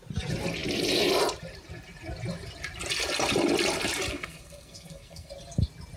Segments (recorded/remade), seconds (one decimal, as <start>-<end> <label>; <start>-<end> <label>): 0.0-4.1 recorded; 4.1-5.3 remade; 5.3-6.0 recorded